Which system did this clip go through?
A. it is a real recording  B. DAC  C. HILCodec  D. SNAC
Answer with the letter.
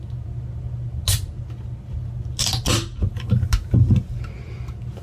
A